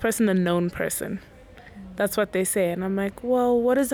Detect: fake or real real